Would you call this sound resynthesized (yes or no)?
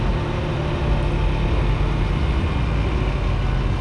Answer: no